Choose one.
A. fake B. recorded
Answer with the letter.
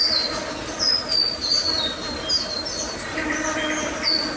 B